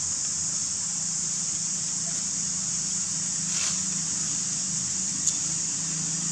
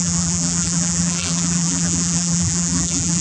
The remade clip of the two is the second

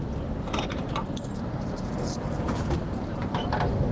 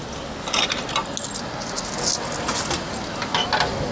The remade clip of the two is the first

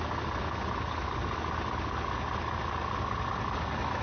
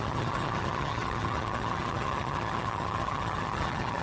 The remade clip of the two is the second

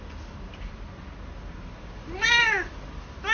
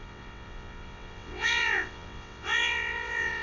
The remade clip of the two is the second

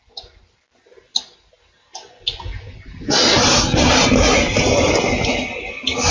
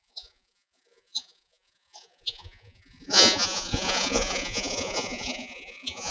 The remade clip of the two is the second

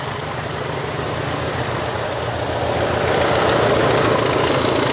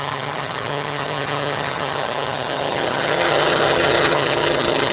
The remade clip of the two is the second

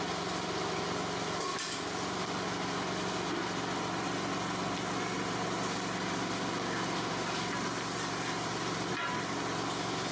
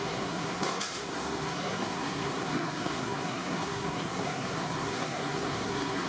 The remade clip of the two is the second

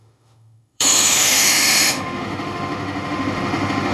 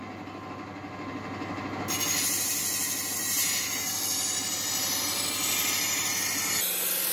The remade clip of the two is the first